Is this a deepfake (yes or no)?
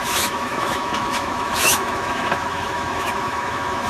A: yes